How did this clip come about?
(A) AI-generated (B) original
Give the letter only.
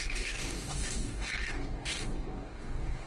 A